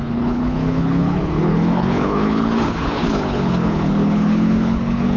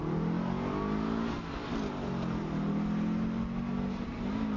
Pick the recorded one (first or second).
second